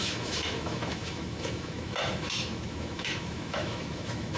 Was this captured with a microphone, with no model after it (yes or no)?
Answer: no